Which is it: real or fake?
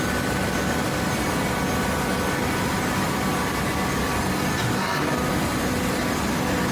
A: real